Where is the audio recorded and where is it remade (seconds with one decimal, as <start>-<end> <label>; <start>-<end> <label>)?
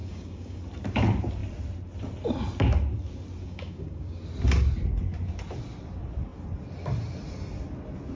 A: 0.0-0.6 remade; 0.6-3.4 recorded; 3.4-4.2 remade; 4.2-8.2 recorded